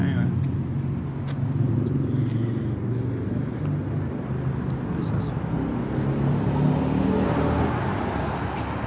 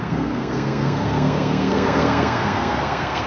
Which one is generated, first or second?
second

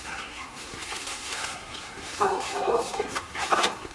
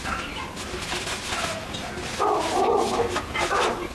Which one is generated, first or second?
first